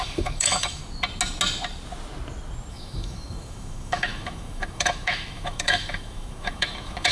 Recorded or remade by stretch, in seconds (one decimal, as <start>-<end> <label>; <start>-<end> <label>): 0.0-0.8 remade; 0.8-2.7 recorded; 2.7-7.1 remade